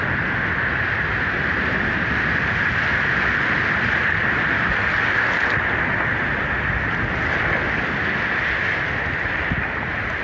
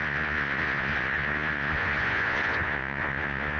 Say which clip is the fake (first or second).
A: second